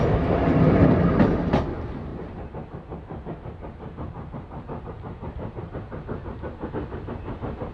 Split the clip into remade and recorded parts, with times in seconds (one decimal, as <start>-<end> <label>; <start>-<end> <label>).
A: 0.0-2.1 recorded; 2.1-6.7 remade; 6.7-7.7 recorded